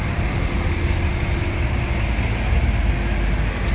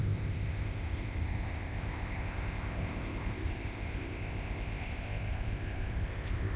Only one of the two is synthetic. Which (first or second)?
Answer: second